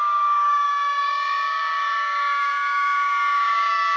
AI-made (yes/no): yes